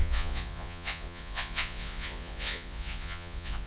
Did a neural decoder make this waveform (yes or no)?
yes